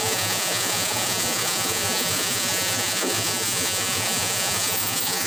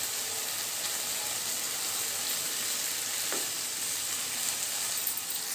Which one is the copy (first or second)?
first